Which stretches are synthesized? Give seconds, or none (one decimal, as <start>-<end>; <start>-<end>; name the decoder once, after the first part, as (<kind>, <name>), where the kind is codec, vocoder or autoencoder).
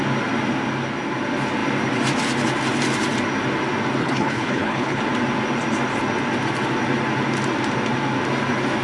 4.0-5.0 (codec, HILCodec)